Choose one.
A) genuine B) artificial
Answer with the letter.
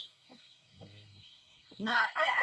B